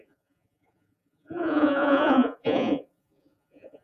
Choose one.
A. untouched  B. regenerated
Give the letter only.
B